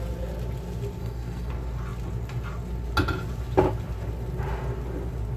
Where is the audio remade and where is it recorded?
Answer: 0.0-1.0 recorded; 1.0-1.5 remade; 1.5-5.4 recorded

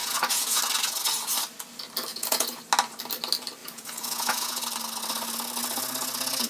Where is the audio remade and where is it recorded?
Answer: 0.0-0.6 remade; 0.6-2.1 recorded; 2.1-2.6 remade; 2.6-3.6 recorded; 3.6-4.6 remade; 4.6-6.5 recorded

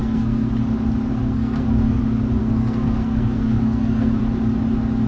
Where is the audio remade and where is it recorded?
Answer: 0.0-0.5 remade; 0.5-1.1 recorded; 1.1-2.0 remade; 2.0-2.4 recorded; 2.4-4.2 remade; 4.2-5.1 recorded

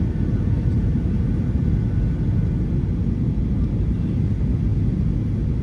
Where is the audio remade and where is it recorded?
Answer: 0.0-5.6 recorded

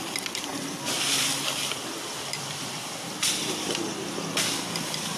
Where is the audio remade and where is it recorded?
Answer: 0.0-0.5 remade; 0.5-3.6 recorded; 3.6-5.2 remade

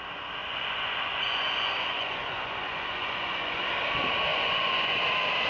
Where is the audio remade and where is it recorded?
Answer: 0.0-0.4 recorded; 0.4-3.7 remade; 3.7-4.3 recorded; 4.3-5.0 remade; 5.0-5.5 recorded

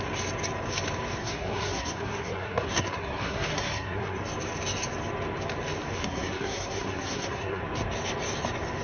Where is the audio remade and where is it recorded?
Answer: 0.0-1.2 recorded; 1.2-4.2 remade; 4.2-6.0 recorded; 6.0-7.6 remade; 7.6-8.8 recorded

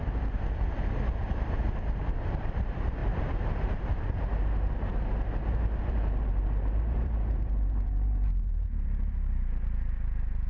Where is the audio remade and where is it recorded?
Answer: 0.0-10.5 remade